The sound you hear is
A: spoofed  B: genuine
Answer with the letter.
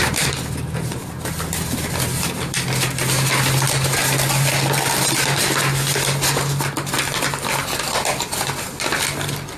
A